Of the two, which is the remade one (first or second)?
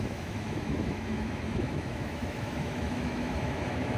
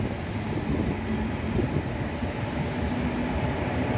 first